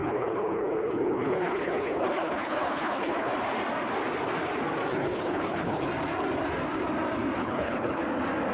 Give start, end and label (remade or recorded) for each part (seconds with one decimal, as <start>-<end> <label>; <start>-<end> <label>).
0.0-3.3 remade; 3.3-4.9 recorded; 4.9-5.8 remade; 5.8-7.4 recorded; 7.4-8.0 remade; 8.0-8.5 recorded